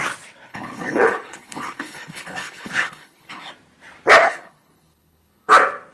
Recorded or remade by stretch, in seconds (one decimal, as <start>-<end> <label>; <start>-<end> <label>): 0.0-0.5 recorded; 0.5-3.5 remade; 3.5-4.2 recorded; 4.2-5.5 remade; 5.5-5.9 recorded